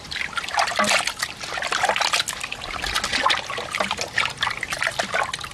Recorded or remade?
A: recorded